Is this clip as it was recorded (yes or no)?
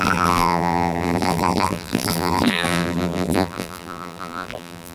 no